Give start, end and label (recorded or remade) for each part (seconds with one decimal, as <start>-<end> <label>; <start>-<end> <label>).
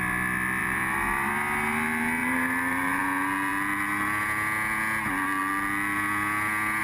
0.0-0.6 recorded; 0.6-1.3 remade; 1.3-2.2 recorded; 2.2-3.0 remade; 3.0-6.8 recorded